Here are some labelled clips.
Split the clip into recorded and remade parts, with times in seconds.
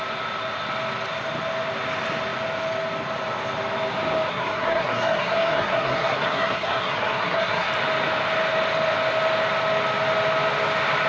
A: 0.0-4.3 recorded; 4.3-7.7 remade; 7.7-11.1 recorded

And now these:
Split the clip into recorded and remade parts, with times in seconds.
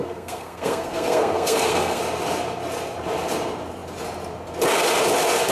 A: 0.0-2.0 remade; 2.0-5.5 recorded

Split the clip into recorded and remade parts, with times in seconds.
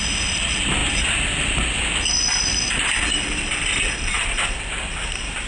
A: 0.0-5.5 recorded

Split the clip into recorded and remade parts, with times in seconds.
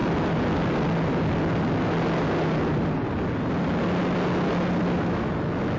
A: 0.0-5.8 recorded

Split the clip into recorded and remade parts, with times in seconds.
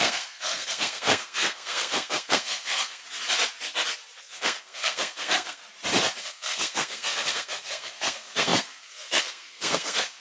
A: 0.0-3.0 remade; 3.0-4.2 recorded; 4.2-5.6 remade; 5.6-6.2 recorded; 6.2-10.2 remade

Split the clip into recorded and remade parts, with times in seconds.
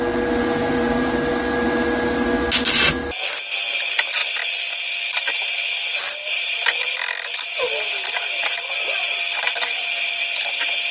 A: 0.0-10.9 recorded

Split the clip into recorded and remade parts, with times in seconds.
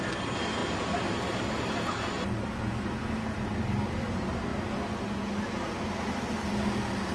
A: 0.0-7.1 recorded